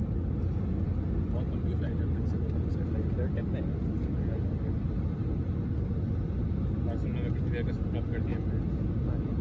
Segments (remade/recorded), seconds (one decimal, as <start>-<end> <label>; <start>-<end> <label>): 0.0-9.4 recorded